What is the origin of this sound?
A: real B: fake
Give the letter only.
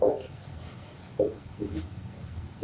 B